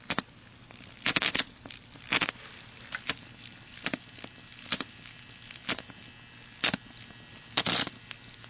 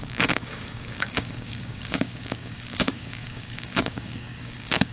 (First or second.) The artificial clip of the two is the second